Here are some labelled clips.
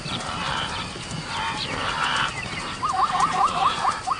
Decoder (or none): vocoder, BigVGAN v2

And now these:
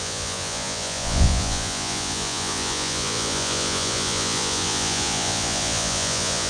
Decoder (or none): vocoder, Vocos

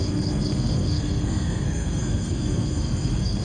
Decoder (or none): codec, SNAC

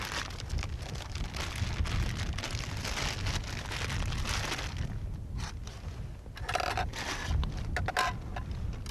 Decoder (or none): none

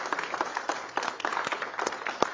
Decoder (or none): none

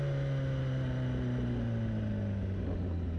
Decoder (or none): none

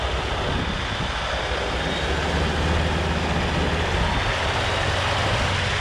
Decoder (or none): none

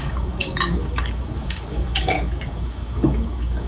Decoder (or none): codec, DAC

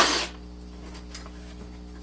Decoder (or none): none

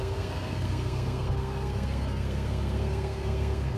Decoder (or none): codec, SNAC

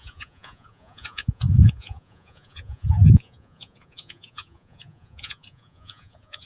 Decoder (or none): vocoder, Vocos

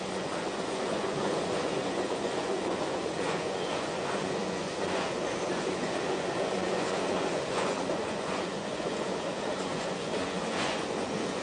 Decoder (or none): vocoder, Vocos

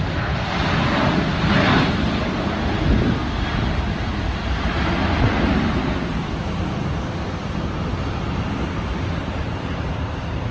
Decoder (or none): none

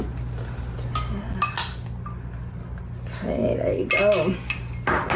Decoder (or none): none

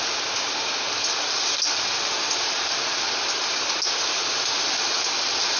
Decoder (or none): none